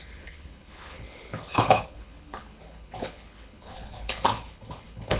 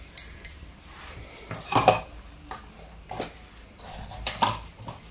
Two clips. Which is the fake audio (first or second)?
first